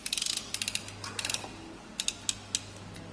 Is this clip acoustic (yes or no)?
yes